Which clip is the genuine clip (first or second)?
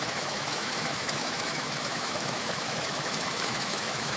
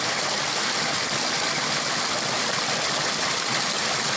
second